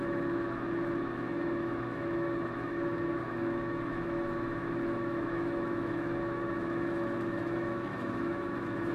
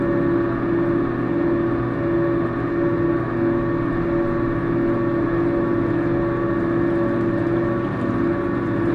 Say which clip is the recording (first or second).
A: second